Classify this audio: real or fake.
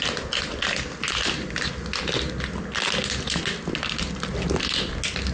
real